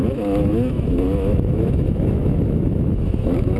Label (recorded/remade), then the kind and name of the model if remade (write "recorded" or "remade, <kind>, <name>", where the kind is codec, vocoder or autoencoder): remade, autoencoder, DAC-VAE